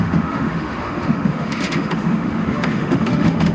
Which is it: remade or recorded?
remade